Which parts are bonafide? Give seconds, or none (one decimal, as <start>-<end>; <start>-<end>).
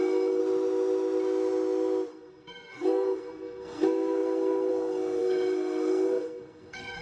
0.4-2.1